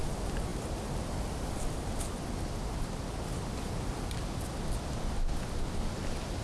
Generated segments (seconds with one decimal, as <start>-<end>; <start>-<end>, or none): none